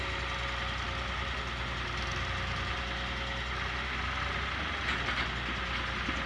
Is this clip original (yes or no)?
yes